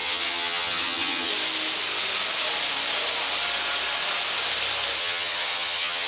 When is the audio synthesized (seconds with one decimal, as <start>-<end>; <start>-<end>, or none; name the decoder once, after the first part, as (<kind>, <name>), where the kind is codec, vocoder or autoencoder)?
0.0-1.3 (vocoder, HiFi-GAN); 5.0-6.1